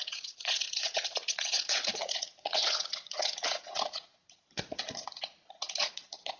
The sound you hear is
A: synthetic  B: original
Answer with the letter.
A